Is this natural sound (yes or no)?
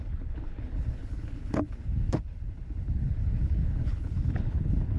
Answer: no